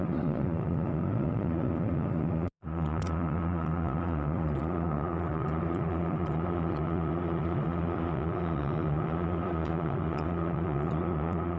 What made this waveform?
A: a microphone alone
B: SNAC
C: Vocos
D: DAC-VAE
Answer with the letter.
C